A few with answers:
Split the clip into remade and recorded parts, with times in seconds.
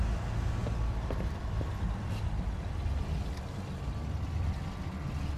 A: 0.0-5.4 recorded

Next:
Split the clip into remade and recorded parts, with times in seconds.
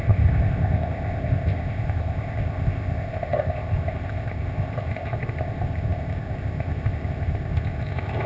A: 0.0-8.3 remade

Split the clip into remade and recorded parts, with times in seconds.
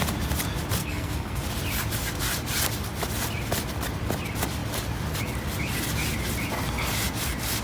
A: 0.0-0.8 recorded; 0.8-1.4 remade; 1.4-7.6 recorded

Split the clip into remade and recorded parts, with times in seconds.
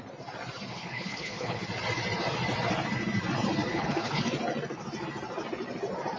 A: 0.0-0.7 recorded; 0.7-1.6 remade; 1.6-3.7 recorded; 3.7-4.2 remade; 4.2-6.2 recorded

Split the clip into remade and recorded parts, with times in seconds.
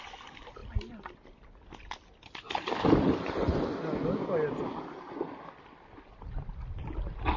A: 0.0-7.4 recorded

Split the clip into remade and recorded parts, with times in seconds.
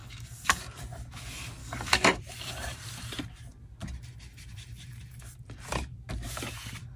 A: 0.0-0.6 remade; 0.6-1.6 recorded; 1.6-2.2 remade; 2.2-7.0 recorded